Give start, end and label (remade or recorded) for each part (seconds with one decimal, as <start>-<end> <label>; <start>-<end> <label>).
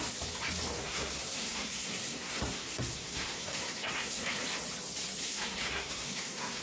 0.0-0.8 recorded; 0.8-4.4 remade; 4.4-5.2 recorded; 5.2-6.6 remade